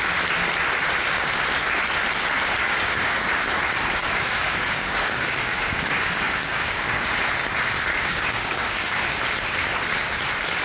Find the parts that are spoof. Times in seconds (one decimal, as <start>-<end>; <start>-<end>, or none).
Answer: 2.6-3.3; 4.0-7.2; 7.9-9.2